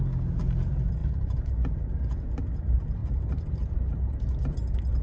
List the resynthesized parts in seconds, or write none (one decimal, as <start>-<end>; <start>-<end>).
1.0-1.7; 3.0-4.3